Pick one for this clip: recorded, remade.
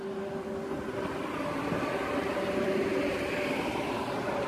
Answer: remade